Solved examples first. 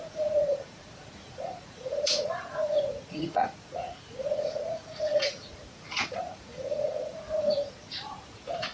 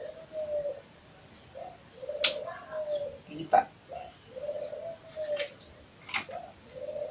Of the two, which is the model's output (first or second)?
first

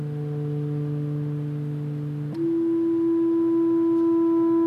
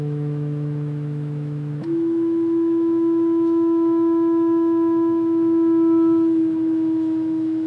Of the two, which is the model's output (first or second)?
second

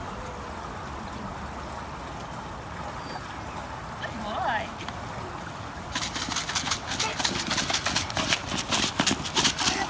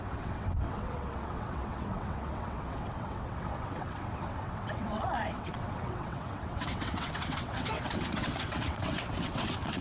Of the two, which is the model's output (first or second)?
second